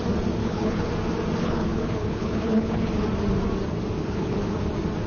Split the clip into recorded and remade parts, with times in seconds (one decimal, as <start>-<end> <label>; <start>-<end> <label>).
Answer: 0.0-0.4 recorded; 0.4-0.9 remade; 0.9-1.4 recorded; 1.4-2.9 remade; 2.9-4.0 recorded; 4.0-4.6 remade; 4.6-5.1 recorded